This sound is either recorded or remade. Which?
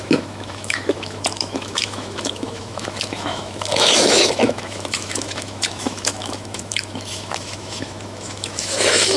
remade